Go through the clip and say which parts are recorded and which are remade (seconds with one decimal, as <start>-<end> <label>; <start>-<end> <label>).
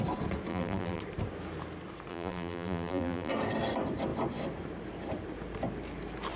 0.0-0.5 recorded; 0.5-1.0 remade; 1.0-2.1 recorded; 2.1-3.3 remade; 3.3-6.4 recorded